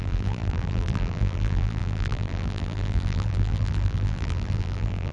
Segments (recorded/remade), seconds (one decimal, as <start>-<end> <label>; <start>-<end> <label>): 0.0-5.1 remade